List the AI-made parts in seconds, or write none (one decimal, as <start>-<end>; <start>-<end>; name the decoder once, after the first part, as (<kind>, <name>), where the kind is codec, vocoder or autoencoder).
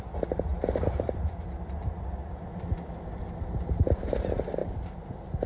0.5-3.8 (vocoder, BigVGAN v2); 4.6-5.1